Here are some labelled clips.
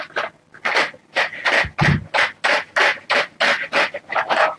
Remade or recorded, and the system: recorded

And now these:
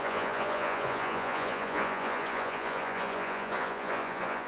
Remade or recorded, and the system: remade, vocoder, Vocos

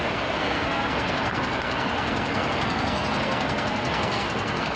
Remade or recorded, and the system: remade, codec, SNAC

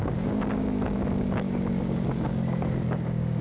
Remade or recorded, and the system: remade, codec, DAC